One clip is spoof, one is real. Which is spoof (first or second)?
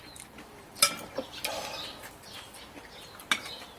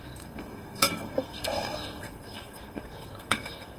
second